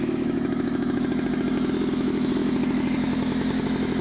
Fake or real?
fake